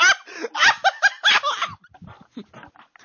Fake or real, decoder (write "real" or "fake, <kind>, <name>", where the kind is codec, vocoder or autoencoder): real